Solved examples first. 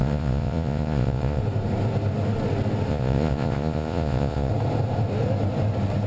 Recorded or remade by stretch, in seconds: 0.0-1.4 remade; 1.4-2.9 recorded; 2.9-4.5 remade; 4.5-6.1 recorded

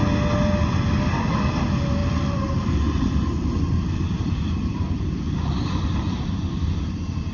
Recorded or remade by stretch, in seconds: 0.0-2.0 recorded; 2.0-6.4 remade; 6.4-7.3 recorded

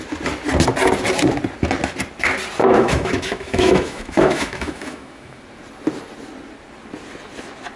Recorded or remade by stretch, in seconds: 0.0-2.6 recorded; 2.6-5.4 remade; 5.4-7.8 recorded